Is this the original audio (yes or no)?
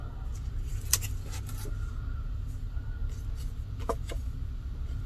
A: yes